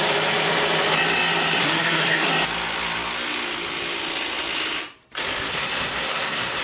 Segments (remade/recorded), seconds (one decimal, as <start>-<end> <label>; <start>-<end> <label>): 0.0-1.6 recorded; 1.6-2.3 remade; 2.3-5.5 recorded; 5.5-6.6 remade